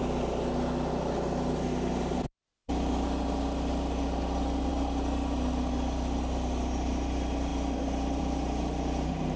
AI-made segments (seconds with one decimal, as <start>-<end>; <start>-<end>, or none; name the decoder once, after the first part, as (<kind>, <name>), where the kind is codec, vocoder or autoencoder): none